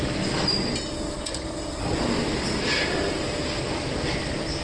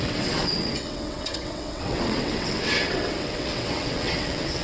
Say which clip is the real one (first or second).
first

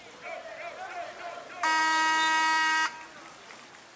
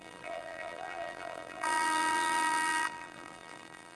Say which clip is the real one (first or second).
first